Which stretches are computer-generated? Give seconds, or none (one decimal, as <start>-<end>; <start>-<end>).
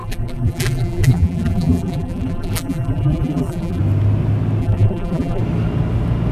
0.0-3.8; 4.6-5.4